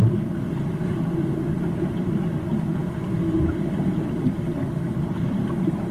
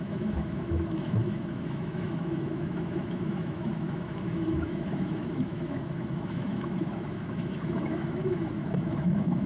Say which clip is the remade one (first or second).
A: second